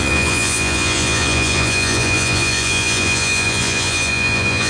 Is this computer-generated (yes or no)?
yes